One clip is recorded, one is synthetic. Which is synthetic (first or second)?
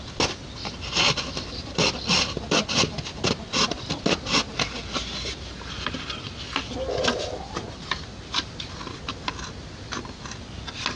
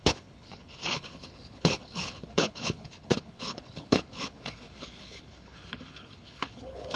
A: second